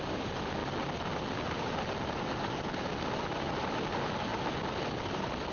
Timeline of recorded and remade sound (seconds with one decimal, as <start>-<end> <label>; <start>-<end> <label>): 0.0-5.5 recorded